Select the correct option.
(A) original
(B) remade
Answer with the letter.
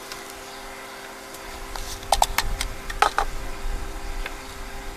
A